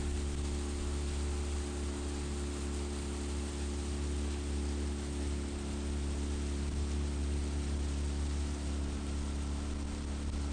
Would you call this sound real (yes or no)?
yes